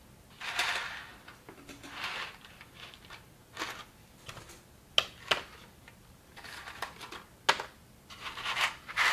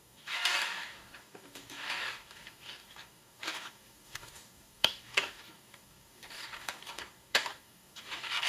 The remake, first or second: second